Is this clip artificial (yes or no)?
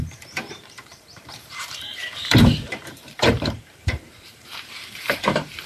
yes